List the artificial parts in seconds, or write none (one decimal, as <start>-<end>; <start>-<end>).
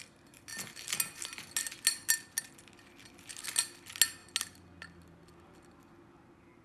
none